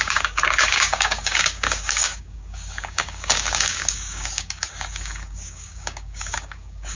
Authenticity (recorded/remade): remade